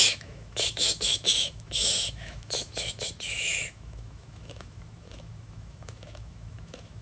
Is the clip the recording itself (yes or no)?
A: no